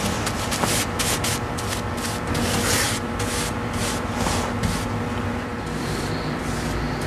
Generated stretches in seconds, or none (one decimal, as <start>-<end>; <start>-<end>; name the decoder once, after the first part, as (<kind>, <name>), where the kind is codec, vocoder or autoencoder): 5.5-6.4 (vocoder, BigVGAN v2)